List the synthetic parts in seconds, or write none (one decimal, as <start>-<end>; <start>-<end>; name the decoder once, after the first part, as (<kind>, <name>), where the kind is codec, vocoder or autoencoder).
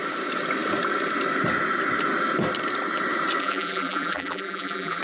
3.4-5.0 (vocoder, BigVGAN v2)